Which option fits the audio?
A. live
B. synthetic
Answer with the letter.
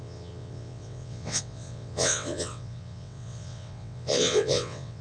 B